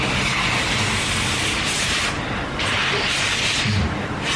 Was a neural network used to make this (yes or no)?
no